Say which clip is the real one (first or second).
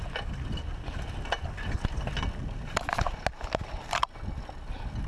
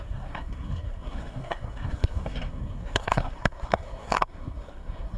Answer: first